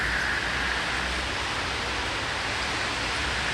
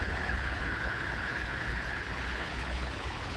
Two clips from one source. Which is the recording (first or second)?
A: first